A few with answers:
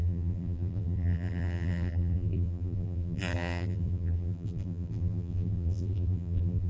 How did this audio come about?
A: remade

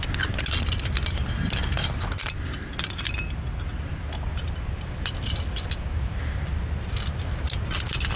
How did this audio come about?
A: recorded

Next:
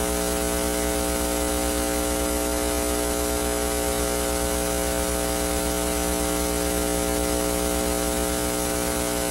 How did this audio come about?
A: recorded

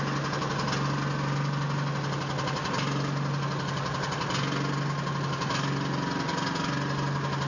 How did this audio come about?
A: recorded